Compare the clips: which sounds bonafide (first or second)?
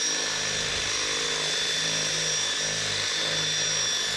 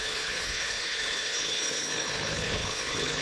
first